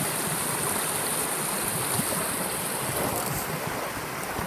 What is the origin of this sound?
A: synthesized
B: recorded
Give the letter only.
B